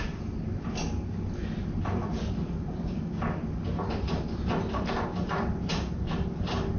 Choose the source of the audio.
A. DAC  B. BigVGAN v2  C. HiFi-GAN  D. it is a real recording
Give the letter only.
D